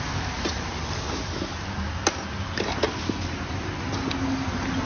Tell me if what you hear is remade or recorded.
recorded